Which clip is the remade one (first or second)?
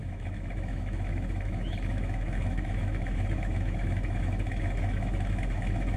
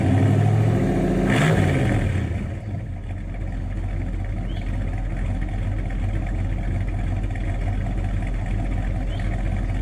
first